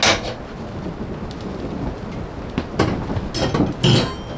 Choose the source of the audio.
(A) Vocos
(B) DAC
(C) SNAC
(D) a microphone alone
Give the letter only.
D